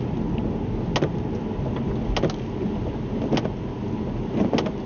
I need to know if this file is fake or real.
real